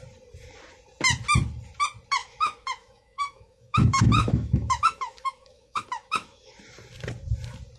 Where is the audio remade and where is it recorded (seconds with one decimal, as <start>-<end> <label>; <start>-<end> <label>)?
0.0-2.2 recorded; 2.2-6.5 remade; 6.5-7.8 recorded